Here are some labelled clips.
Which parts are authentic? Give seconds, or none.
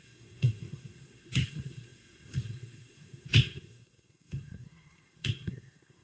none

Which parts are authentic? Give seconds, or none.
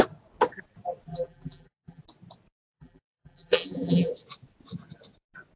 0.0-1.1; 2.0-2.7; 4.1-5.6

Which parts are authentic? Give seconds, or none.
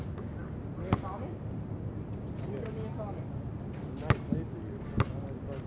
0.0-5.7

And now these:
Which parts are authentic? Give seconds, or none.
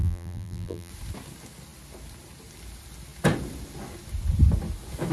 0.9-5.1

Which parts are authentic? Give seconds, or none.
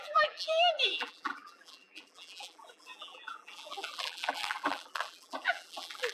none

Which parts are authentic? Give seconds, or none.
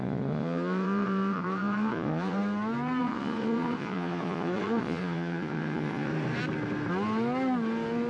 2.4-3.0; 6.1-8.1